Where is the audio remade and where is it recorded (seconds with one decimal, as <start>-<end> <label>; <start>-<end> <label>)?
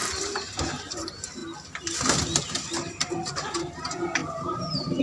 0.0-1.4 remade; 1.4-2.9 recorded; 2.9-5.0 remade